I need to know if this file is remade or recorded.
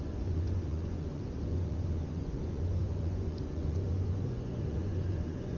remade